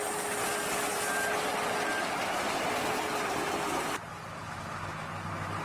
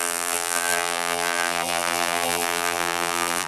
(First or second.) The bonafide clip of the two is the first